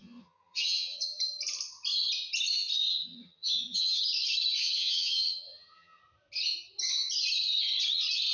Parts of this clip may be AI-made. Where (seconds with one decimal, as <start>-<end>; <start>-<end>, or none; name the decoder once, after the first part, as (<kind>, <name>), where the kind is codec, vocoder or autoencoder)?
0.0-1.2 (vocoder, HiFi-GAN); 2.9-4.0; 4.6-6.0

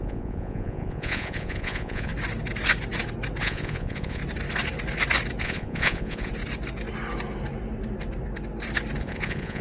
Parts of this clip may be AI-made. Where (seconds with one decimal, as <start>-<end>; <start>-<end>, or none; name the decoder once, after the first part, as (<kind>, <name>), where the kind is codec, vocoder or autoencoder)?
0.0-2.1 (vocoder, Vocos); 3.4-4.2; 5.4-6.3; 9.0-9.6

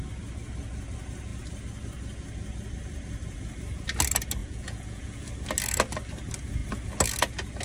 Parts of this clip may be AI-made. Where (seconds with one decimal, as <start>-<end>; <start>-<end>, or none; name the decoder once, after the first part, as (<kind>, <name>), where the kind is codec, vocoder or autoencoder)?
4.4-5.2 (vocoder, Vocos)

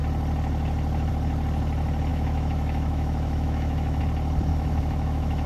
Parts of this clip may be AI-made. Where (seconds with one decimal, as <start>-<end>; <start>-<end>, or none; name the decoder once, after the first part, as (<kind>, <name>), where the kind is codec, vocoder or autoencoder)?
2.1-4.0 (autoencoder, DAC-VAE); 4.5-5.5

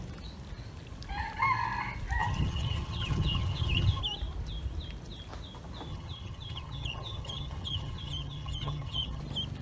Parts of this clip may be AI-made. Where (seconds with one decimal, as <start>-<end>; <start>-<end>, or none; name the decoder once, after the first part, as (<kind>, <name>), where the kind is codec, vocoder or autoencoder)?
2.2-4.0 (vocoder, HiFi-GAN); 5.9-9.2

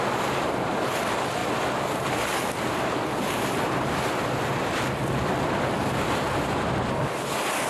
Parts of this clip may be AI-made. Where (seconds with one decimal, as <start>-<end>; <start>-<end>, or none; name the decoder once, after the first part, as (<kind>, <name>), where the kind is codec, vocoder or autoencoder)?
none